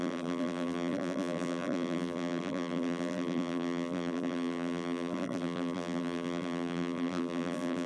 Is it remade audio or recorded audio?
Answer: remade